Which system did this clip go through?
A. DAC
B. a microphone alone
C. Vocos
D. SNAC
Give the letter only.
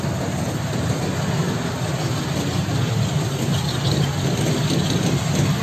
B